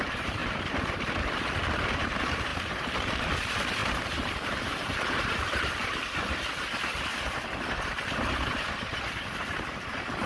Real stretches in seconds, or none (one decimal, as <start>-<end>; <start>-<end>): 0.4-2.0; 3.8-7.3